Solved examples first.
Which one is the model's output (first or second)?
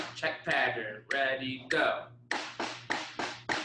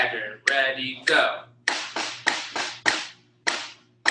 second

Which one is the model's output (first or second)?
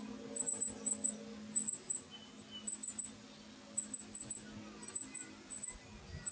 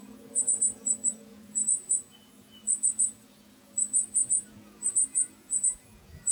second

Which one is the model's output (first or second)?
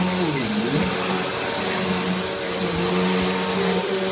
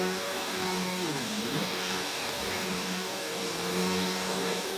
second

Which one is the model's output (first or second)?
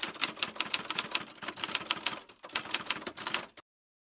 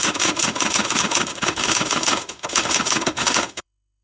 second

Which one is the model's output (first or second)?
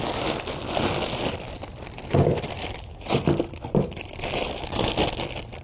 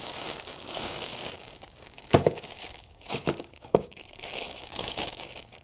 second